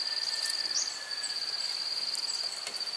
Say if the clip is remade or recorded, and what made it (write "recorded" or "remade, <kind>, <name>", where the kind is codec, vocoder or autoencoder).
recorded